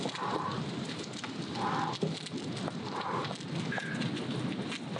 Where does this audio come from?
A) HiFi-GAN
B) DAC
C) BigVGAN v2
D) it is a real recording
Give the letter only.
D